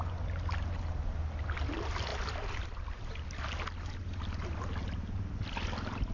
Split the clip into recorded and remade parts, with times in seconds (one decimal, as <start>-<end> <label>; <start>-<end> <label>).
0.0-6.1 recorded